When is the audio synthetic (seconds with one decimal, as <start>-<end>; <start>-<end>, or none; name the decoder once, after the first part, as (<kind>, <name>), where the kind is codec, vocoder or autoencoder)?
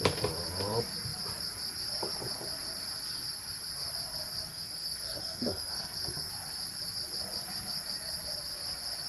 4.5-6.3 (codec, SNAC)